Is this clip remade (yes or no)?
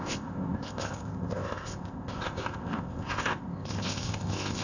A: yes